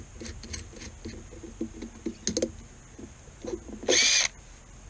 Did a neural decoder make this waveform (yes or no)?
no